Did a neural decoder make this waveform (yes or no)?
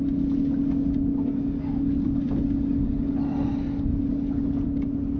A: no